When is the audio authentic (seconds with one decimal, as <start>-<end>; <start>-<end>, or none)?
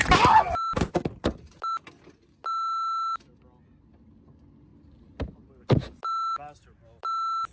0.0-7.5